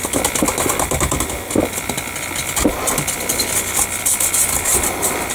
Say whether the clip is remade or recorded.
recorded